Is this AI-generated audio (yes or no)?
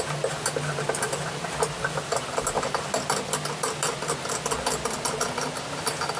no